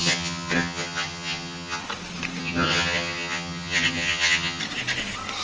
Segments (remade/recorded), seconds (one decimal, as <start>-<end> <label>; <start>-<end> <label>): 0.0-1.8 remade; 1.8-2.4 recorded; 2.4-4.6 remade; 4.6-5.4 recorded

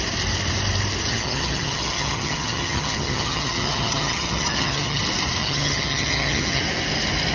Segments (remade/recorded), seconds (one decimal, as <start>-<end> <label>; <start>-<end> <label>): 0.0-1.1 recorded; 1.1-5.0 remade; 5.0-5.4 recorded; 5.4-6.6 remade; 6.6-7.3 recorded

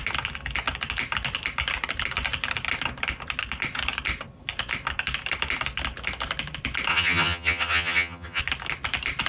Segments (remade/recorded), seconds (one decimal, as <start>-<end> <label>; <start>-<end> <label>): 0.0-6.9 recorded; 6.9-8.4 remade; 8.4-9.3 recorded

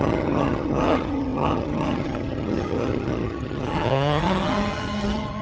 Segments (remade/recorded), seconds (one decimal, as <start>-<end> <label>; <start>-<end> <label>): 0.0-5.4 remade

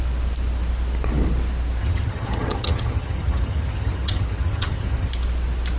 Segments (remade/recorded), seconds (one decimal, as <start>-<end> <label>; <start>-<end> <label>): 0.0-1.8 recorded; 1.8-5.1 remade; 5.1-5.8 recorded

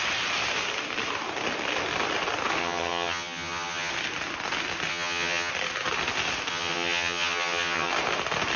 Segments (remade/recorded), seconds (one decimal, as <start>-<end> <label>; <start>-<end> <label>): 0.0-2.6 recorded; 2.6-3.9 remade; 3.9-4.9 recorded; 4.9-5.5 remade; 5.5-6.5 recorded; 6.5-7.9 remade; 7.9-8.6 recorded

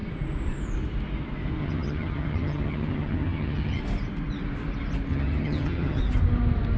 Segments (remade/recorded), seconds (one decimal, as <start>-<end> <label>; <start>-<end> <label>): 0.0-1.6 recorded; 1.6-3.8 remade; 3.8-5.1 recorded; 5.1-6.0 remade; 6.0-6.8 recorded